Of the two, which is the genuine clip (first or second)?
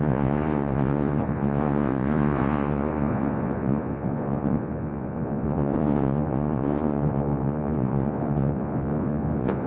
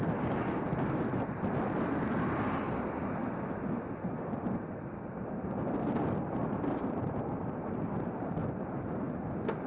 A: second